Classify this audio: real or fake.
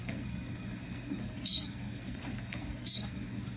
fake